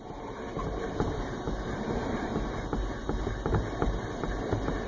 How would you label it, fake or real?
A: fake